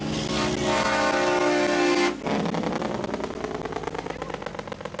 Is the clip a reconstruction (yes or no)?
no